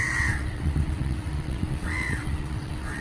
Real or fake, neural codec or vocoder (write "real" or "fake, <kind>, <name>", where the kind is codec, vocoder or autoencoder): fake, vocoder, WaveNeXt